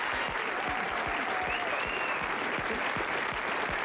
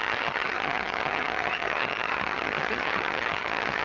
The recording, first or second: first